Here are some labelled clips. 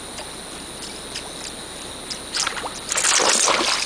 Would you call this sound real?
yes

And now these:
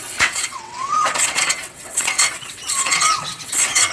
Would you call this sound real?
no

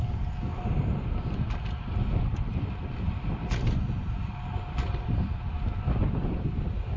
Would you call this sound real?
yes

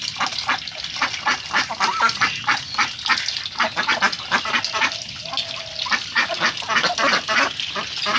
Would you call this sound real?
yes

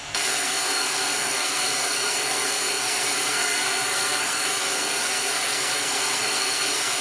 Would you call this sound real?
no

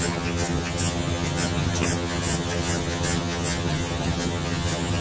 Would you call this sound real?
no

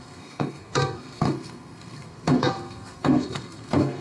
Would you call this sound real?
no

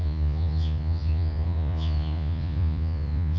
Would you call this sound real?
no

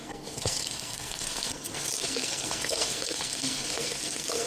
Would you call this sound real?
no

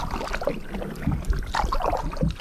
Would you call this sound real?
yes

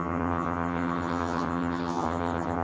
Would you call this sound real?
no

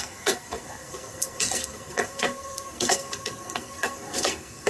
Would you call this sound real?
no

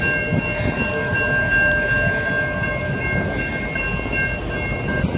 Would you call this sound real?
yes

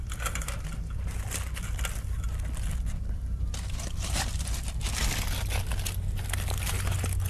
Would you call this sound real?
yes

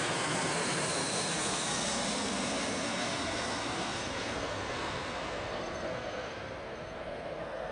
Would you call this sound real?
no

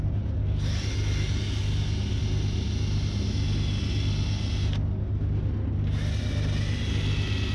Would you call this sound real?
yes